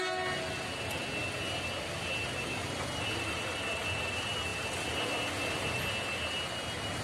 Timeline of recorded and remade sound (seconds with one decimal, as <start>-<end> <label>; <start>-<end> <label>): 0.0-2.6 recorded; 2.6-3.6 remade; 3.6-7.0 recorded